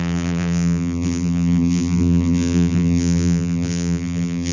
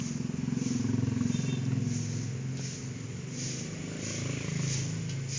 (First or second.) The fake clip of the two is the first